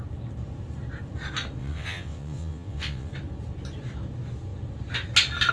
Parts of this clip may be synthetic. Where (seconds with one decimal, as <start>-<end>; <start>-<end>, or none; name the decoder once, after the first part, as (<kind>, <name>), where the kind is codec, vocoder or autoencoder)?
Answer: 1.6-3.1 (vocoder, WaveNeXt)